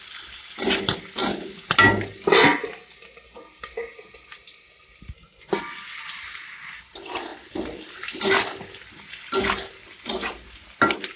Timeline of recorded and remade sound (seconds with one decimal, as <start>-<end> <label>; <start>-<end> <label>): 0.0-11.2 recorded